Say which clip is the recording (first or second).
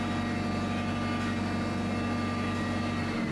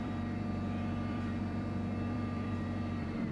first